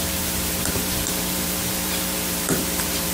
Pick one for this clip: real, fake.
fake